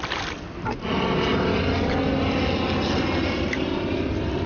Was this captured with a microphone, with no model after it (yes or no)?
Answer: yes